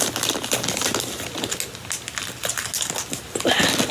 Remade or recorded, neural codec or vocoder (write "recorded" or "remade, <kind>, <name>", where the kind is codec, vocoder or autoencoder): recorded